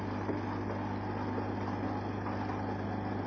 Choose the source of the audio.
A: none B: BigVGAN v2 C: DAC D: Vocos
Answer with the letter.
A